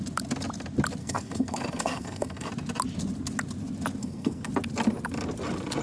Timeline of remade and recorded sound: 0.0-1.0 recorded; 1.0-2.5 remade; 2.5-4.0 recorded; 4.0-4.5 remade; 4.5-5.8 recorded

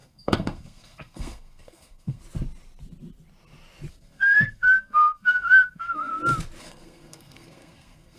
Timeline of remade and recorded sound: 0.0-2.2 remade; 2.2-3.9 recorded; 3.9-6.1 remade; 6.1-6.6 recorded; 6.6-8.2 remade

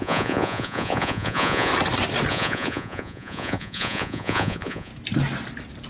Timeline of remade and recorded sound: 0.0-1.7 remade; 1.7-2.3 recorded; 2.3-4.9 remade; 4.9-5.9 recorded

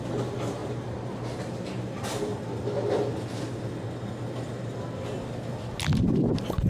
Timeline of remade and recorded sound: 0.0-2.3 remade; 2.3-6.0 recorded; 6.0-6.7 remade

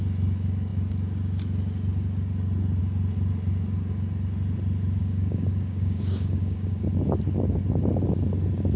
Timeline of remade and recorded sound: 0.0-5.0 recorded; 5.0-6.8 remade; 6.8-8.8 recorded